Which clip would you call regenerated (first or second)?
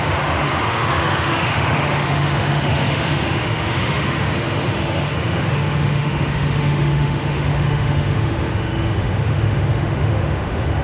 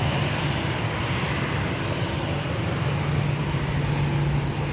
first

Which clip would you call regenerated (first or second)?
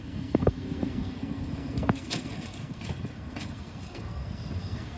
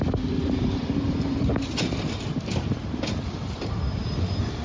first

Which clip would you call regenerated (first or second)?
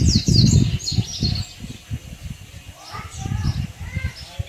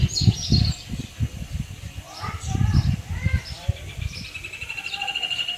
second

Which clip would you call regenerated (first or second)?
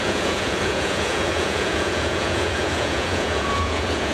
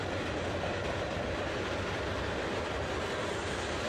first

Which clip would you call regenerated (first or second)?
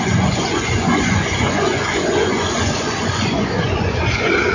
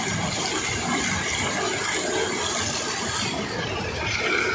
first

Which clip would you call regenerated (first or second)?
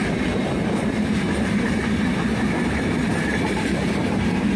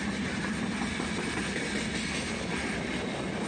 first